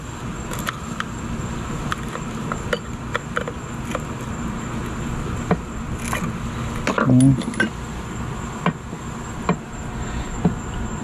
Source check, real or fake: real